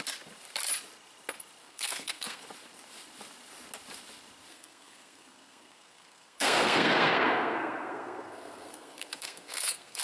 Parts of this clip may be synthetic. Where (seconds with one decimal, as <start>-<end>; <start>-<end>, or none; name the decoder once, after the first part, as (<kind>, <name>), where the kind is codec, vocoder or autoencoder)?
1.6-2.4 (codec, SNAC); 4.5-10.0